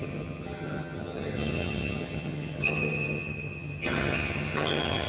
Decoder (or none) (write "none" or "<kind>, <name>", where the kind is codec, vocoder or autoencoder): vocoder, HiFi-GAN